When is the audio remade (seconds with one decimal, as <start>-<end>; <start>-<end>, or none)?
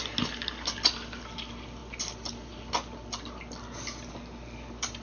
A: none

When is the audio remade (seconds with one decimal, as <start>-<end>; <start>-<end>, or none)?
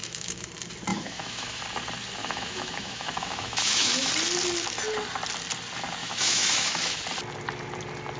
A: 0.0-0.5; 0.9-1.6; 2.2-4.1; 6.0-7.0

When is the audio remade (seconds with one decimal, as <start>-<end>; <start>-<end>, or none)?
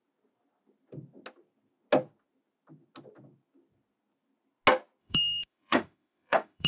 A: 5.0-6.7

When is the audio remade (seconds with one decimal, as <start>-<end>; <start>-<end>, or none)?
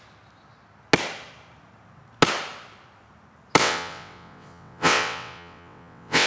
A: 3.6-6.3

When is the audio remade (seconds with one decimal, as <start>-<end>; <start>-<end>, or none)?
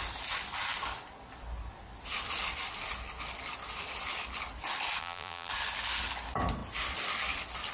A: 5.0-5.5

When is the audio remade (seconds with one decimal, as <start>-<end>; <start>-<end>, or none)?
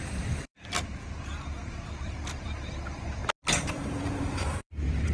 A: 0.0-3.2; 3.7-5.1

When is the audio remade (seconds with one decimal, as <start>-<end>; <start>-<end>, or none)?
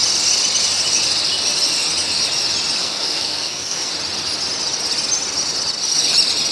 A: 2.8-3.9